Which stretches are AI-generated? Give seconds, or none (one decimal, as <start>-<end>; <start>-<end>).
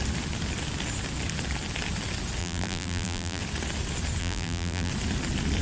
2.4-3.4; 4.2-4.9